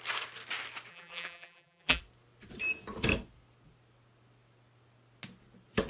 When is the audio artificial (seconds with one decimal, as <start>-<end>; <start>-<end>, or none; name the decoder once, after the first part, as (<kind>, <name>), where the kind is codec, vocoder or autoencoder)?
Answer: 0.9-2.0 (vocoder, BigVGAN v2)